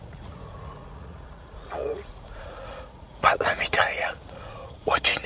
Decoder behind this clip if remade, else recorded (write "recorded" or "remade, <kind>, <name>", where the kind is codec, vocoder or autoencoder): remade, vocoder, Vocos